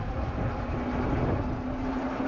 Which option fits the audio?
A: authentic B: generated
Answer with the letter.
A